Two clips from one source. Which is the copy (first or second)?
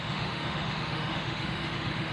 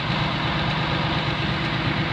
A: first